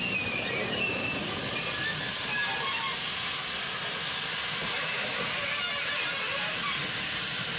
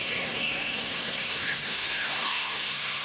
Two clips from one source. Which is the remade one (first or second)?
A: second